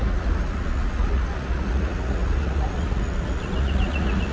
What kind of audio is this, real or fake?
fake